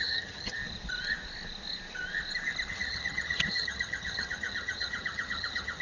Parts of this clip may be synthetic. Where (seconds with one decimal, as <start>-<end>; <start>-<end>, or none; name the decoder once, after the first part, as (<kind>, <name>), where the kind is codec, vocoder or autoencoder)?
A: 0.0-0.6 (vocoder, HiFi-GAN); 2.7-5.8